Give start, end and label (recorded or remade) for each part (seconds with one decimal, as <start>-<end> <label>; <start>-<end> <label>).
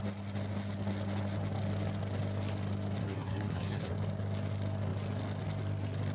0.0-3.0 recorded; 3.0-3.9 remade; 3.9-6.1 recorded